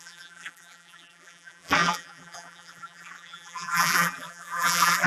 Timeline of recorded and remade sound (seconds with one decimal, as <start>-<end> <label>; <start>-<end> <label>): 0.0-5.1 remade